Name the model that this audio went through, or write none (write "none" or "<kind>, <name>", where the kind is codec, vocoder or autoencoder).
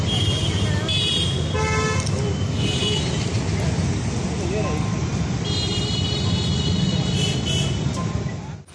none